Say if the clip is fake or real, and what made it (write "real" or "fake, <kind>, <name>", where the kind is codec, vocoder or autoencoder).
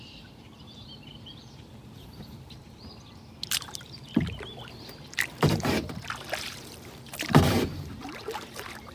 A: fake, vocoder, BigVGAN v2